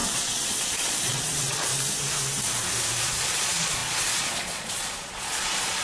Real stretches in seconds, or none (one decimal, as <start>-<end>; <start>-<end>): 1.7-3.0